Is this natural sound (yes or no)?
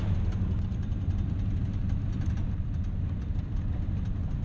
no